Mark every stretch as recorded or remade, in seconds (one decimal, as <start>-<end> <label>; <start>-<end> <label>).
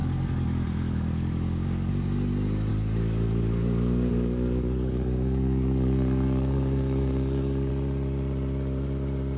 0.0-1.9 remade; 1.9-2.7 recorded; 2.7-7.7 remade; 7.7-9.4 recorded